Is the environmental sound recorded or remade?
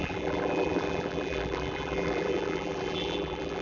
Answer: remade